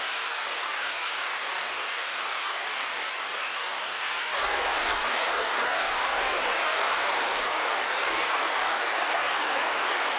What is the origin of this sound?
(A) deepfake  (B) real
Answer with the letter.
A